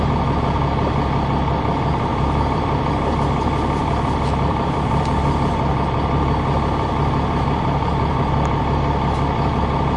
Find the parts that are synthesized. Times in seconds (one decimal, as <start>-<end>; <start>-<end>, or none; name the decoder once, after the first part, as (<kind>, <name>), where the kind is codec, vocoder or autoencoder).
2.1-2.9 (vocoder, BigVGAN v2); 3.8-8.6